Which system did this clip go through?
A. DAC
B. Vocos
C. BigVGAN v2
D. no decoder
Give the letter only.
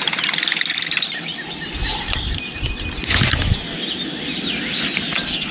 D